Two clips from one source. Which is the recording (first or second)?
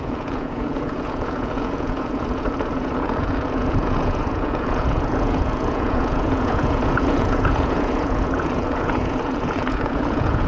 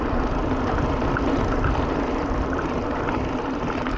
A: second